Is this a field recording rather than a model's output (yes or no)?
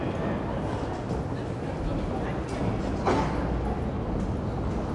yes